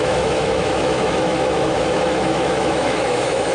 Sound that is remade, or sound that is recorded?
remade